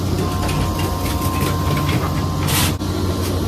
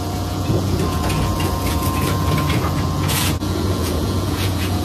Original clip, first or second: first